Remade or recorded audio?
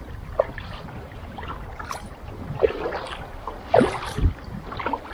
remade